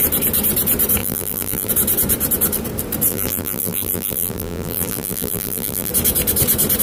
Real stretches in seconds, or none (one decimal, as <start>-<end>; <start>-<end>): 0.0-1.0; 1.7-3.1; 5.9-6.8